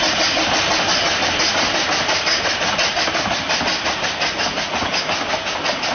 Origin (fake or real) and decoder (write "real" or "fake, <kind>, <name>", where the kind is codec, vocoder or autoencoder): real